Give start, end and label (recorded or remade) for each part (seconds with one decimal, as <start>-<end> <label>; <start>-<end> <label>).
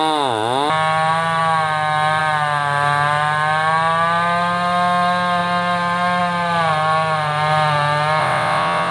0.0-8.2 recorded; 8.2-8.9 remade